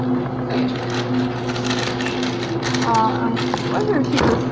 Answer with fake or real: real